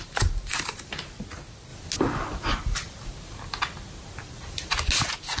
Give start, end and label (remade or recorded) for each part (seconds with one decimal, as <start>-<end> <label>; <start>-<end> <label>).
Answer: 0.0-5.4 recorded